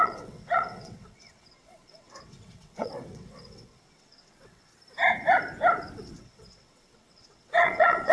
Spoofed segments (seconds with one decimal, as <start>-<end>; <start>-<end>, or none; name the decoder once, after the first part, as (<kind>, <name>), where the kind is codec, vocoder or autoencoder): 0.0-4.7 (vocoder, WaveNeXt); 5.9-8.1